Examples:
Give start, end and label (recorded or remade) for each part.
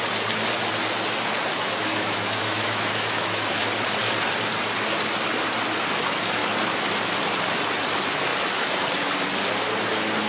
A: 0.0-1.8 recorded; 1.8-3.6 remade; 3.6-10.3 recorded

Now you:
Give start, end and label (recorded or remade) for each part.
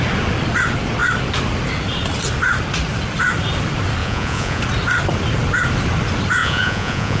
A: 0.0-4.0 recorded; 4.0-4.6 remade; 4.6-6.4 recorded; 6.4-7.2 remade